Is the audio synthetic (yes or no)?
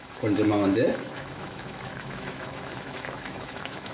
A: yes